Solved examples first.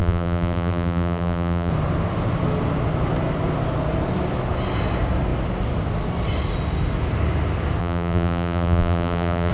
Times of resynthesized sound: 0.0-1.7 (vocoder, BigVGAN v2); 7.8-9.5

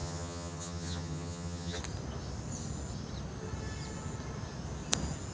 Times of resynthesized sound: 0.0-1.8 (vocoder, HiFi-GAN)

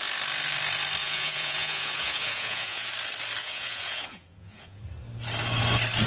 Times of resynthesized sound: 1.0-2.9 (vocoder, Vocos); 3.4-4.8

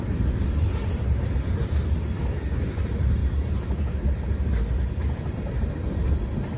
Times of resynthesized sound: none

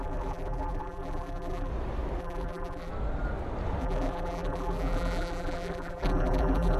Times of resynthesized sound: 0.0-1.7 (vocoder, BigVGAN v2); 2.2-2.9; 3.8-6.8

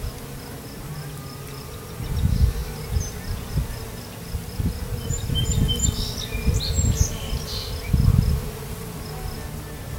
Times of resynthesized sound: none